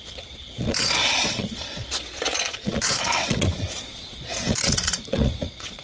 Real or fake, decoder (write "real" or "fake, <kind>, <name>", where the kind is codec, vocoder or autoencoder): fake, vocoder, Vocos